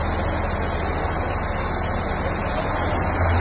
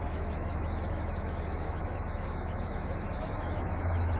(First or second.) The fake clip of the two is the second